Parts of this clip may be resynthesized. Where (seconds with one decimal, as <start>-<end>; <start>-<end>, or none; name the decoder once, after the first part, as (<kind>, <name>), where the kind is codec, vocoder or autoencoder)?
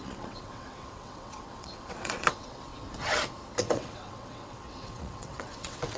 0.0-2.7 (vocoder, WaveNeXt); 3.6-6.0